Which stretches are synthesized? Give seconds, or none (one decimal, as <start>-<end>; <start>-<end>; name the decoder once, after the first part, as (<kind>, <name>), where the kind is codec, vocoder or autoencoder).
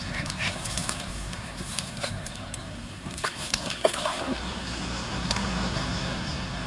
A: 0.0-6.7 (codec, SNAC)